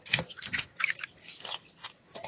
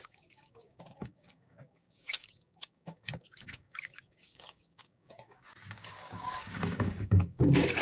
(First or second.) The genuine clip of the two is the first